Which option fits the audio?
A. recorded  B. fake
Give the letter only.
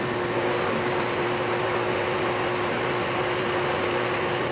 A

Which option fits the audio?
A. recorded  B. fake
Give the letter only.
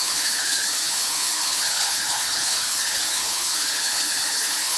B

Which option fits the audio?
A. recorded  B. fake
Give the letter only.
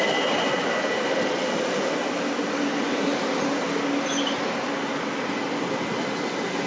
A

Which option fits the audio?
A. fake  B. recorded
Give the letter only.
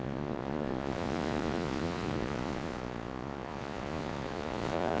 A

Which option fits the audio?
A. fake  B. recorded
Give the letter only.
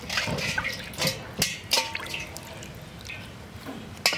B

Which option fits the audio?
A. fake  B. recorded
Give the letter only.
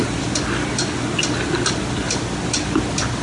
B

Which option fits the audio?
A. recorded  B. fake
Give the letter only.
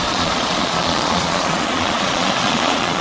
B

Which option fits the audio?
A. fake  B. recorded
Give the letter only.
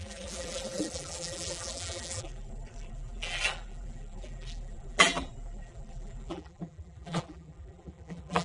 A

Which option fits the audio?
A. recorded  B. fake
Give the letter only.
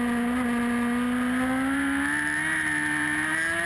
A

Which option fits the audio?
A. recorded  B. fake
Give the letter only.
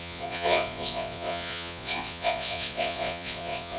B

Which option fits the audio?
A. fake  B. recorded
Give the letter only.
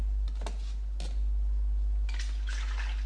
B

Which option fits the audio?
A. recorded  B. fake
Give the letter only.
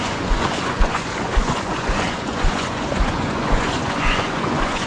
B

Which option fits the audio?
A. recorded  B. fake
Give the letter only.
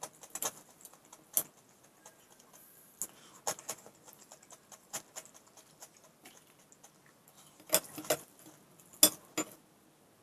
A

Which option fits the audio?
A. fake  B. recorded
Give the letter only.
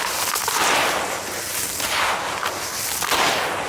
B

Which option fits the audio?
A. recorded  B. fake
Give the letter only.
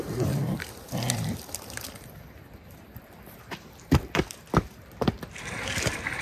B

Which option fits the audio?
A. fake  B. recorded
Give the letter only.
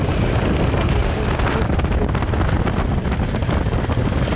B